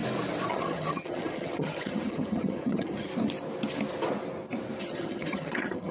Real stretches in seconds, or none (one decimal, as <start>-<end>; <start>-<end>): 0.0-0.5; 3.1-4.8